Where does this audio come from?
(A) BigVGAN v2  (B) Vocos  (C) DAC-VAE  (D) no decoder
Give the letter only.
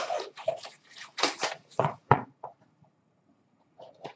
B